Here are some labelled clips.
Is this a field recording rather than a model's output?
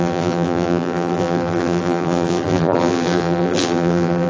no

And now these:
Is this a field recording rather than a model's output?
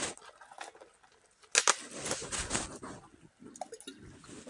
yes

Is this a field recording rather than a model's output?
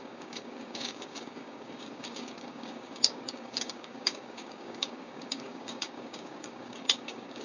no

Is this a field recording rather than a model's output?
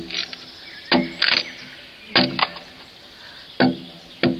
yes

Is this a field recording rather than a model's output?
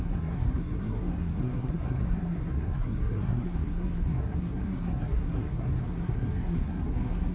no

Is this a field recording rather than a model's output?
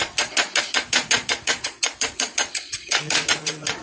no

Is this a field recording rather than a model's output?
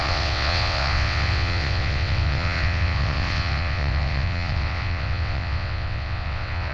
no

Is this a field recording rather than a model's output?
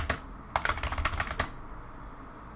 yes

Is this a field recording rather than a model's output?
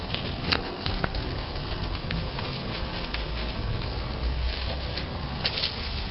no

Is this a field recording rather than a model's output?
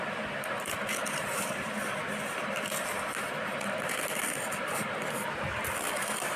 yes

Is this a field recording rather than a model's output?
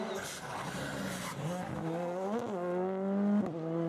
yes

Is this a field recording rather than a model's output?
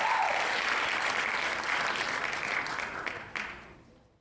yes